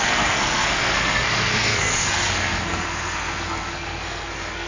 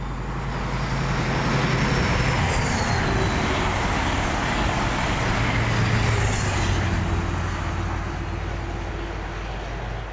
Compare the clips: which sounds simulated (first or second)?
first